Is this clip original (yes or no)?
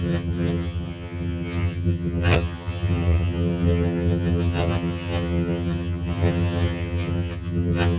no